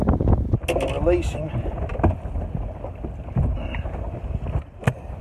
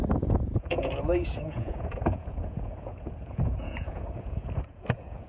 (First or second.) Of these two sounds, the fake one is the second